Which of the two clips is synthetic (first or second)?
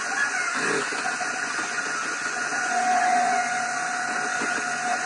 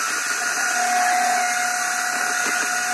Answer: first